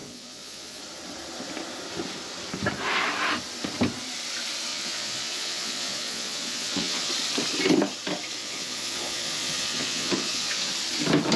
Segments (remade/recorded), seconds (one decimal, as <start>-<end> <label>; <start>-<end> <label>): 0.0-0.8 remade; 0.8-4.7 recorded; 4.7-7.1 remade; 7.1-8.4 recorded; 8.4-10.7 remade; 10.7-11.4 recorded